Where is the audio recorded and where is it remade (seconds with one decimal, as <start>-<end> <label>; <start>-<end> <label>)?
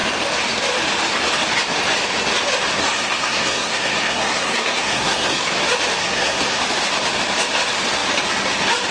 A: 0.0-2.8 recorded; 2.8-5.4 remade; 5.4-6.0 recorded; 6.0-6.6 remade; 6.6-8.9 recorded